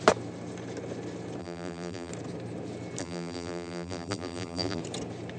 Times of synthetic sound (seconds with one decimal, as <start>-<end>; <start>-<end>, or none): 1.4-2.1; 3.0-4.8